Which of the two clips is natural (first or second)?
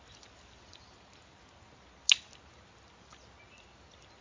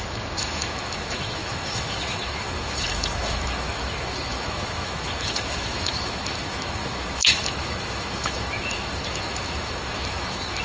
first